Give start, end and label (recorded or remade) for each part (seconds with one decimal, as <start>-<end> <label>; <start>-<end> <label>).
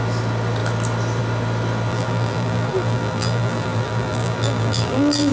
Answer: 0.0-1.9 recorded; 1.9-5.3 remade